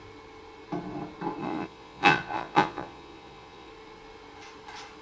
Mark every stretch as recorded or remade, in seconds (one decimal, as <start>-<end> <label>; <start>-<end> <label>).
0.0-1.4 recorded; 1.4-3.7 remade; 3.7-5.0 recorded